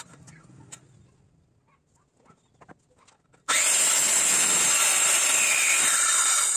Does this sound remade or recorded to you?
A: recorded